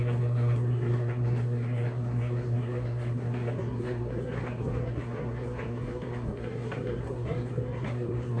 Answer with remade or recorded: remade